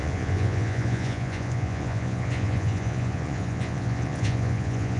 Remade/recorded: remade